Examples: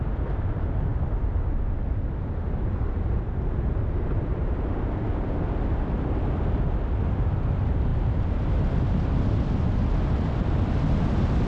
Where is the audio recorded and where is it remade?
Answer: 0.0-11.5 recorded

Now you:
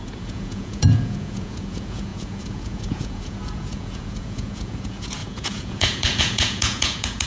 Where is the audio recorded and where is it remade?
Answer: 0.0-7.3 remade

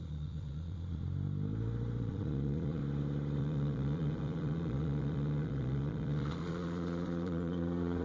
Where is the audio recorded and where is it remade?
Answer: 0.0-1.0 remade; 1.0-2.0 recorded; 2.0-2.8 remade; 2.8-3.4 recorded; 3.4-8.0 remade